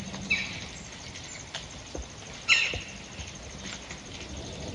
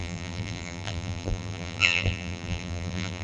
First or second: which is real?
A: first